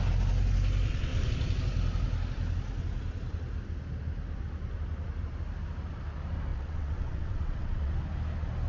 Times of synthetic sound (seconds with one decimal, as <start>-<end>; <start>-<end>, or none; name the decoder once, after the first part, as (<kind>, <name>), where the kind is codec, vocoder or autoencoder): 6.5-7.9 (vocoder, WaveNeXt)